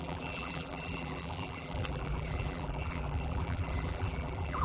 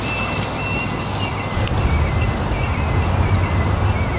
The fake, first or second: first